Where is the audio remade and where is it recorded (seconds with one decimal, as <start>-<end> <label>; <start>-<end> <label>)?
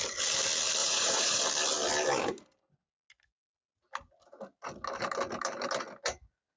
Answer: 0.0-0.8 recorded; 0.8-1.4 remade; 1.4-6.6 recorded